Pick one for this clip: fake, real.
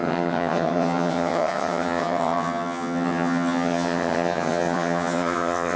fake